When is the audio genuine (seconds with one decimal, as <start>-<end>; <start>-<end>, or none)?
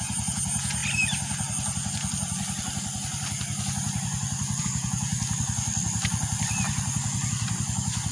0.8-4.6; 5.1-8.1